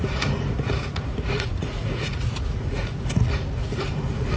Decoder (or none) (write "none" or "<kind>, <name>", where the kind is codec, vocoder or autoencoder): vocoder, Vocos